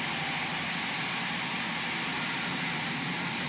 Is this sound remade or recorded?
recorded